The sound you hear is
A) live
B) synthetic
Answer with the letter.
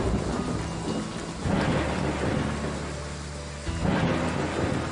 A